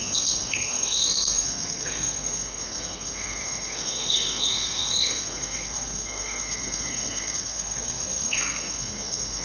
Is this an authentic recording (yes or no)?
no